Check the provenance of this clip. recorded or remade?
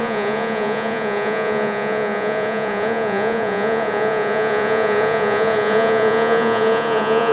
remade